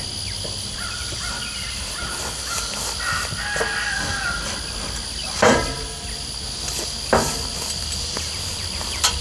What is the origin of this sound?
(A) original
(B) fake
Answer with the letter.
A